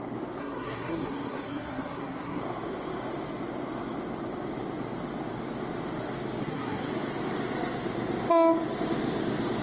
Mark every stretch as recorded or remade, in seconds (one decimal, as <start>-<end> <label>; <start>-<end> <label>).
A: 0.0-0.4 recorded; 0.4-2.4 remade; 2.4-6.4 recorded; 6.4-6.9 remade; 6.9-9.6 recorded